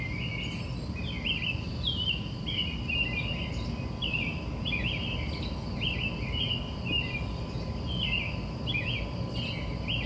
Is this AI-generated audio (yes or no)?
no